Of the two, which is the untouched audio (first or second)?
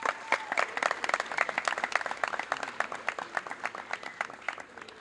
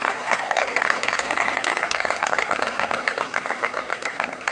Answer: first